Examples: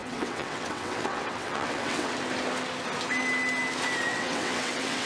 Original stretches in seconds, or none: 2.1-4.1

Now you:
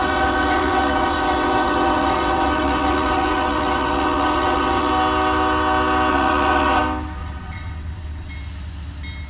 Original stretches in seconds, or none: 4.9-6.1; 6.8-7.2; 8.3-9.3

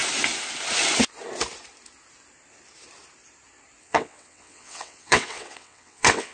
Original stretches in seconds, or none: 0.0-3.8

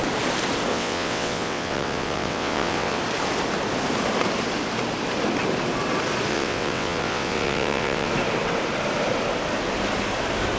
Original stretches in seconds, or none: 0.0-0.7; 3.0-6.3; 8.1-10.6

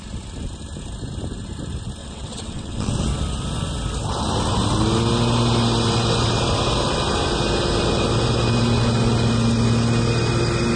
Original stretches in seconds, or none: 0.0-2.0; 2.9-10.8

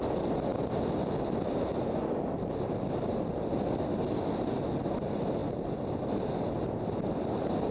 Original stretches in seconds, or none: 0.0-7.7